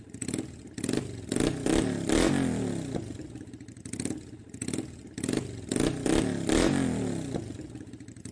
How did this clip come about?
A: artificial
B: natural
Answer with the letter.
B